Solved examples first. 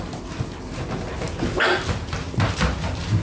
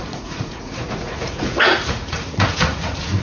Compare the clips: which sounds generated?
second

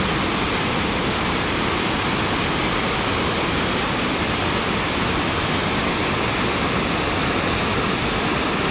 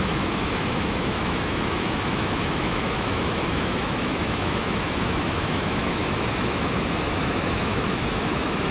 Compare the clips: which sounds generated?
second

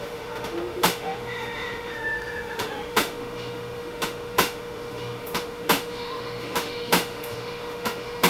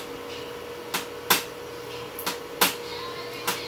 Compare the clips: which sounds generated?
first